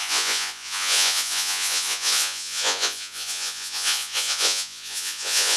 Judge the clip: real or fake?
fake